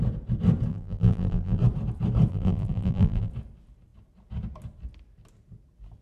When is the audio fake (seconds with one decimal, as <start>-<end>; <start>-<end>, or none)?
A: 0.7-1.6; 2.3-3.3